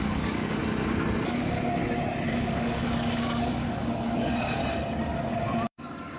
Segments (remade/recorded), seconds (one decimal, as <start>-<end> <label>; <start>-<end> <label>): 0.0-0.6 remade; 0.6-1.3 recorded; 1.3-1.8 remade; 1.8-2.3 recorded; 2.3-4.6 remade; 4.6-5.3 recorded; 5.3-6.2 remade